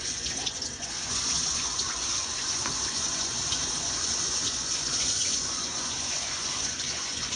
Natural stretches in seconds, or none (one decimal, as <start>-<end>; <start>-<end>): none